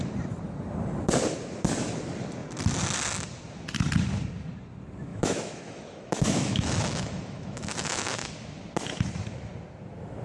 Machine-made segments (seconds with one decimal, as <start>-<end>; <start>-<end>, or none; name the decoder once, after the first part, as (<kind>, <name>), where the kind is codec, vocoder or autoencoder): 5.1-8.3 (autoencoder, DAC-VAE)